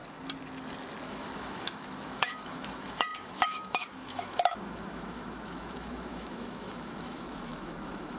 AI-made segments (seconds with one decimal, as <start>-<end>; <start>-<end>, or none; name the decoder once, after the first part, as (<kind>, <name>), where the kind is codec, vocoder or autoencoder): 1.1-8.2 (autoencoder, DAC-VAE)